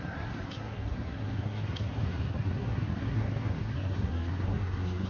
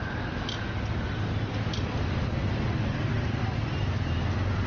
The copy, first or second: first